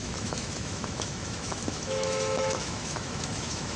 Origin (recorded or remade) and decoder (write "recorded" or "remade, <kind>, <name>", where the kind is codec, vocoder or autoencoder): remade, autoencoder, DAC-VAE